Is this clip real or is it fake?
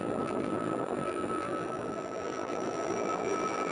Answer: fake